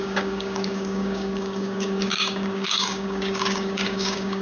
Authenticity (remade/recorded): remade